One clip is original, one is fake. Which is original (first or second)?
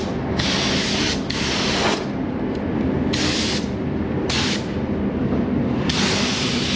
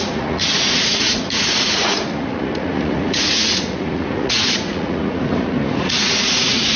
first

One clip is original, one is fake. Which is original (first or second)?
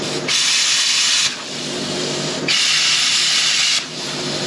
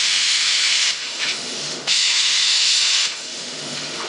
first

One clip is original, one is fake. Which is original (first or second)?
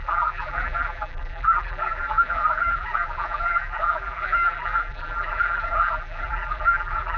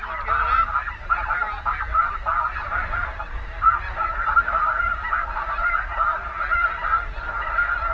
second